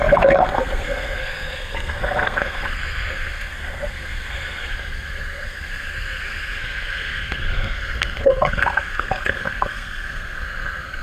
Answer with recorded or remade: remade